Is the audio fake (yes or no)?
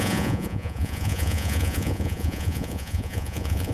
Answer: yes